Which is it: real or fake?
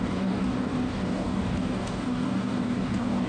fake